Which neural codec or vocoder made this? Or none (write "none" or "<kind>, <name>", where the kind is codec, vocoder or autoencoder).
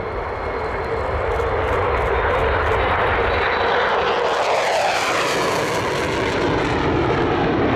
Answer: none